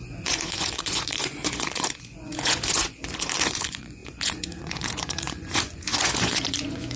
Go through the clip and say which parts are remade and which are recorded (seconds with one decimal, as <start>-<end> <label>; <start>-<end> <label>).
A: 0.0-7.0 remade